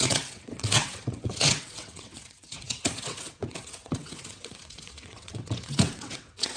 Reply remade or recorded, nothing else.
remade